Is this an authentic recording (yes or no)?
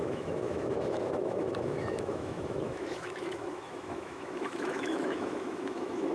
no